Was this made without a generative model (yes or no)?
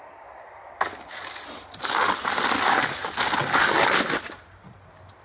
yes